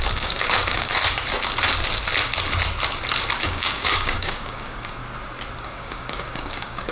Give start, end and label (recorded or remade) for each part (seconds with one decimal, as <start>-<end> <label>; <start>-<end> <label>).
0.0-1.0 remade; 1.0-3.4 recorded; 3.4-5.0 remade; 5.0-5.6 recorded; 5.6-6.9 remade